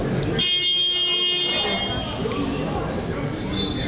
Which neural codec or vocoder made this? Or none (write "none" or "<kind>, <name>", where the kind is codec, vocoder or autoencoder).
none